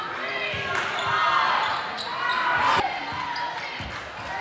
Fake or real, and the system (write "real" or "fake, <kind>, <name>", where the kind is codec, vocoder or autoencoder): real